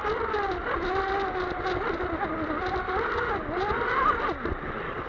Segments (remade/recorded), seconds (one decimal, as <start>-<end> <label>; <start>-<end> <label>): 0.0-5.1 recorded